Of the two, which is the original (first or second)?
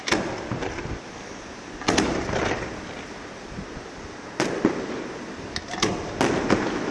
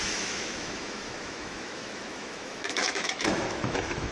first